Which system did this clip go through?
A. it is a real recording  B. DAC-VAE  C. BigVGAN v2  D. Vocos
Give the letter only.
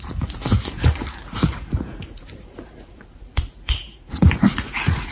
D